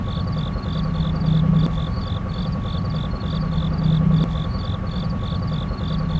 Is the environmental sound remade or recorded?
recorded